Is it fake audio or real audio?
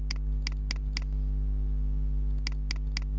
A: real